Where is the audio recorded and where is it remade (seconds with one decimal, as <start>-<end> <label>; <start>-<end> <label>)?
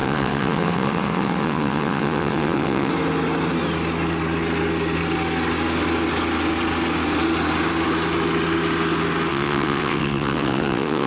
0.0-2.9 remade; 2.9-9.3 recorded; 9.3-11.1 remade